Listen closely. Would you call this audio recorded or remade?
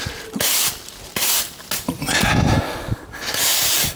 recorded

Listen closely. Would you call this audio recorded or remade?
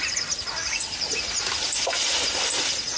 recorded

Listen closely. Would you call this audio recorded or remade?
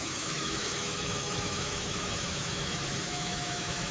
remade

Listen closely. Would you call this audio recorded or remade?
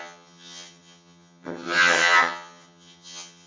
remade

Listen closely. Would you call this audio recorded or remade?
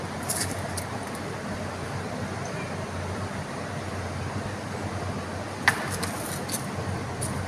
recorded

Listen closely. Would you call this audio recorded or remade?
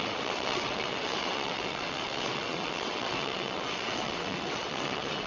remade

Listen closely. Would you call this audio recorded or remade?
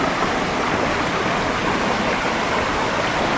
recorded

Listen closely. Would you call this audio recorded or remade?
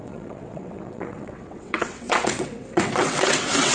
remade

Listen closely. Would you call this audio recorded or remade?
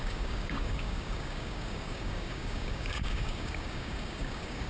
remade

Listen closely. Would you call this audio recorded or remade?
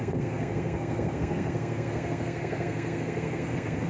remade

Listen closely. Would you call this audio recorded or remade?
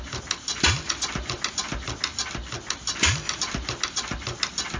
recorded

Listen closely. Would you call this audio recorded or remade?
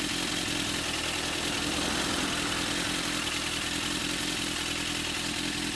recorded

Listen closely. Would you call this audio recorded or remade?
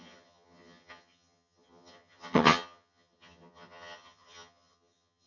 remade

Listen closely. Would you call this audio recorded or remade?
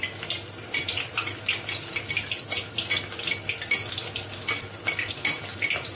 recorded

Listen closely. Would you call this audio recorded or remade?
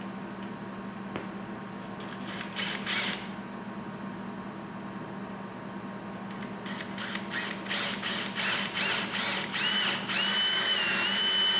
recorded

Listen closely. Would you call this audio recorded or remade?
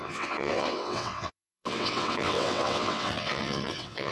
remade